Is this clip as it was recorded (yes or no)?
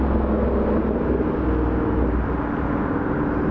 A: yes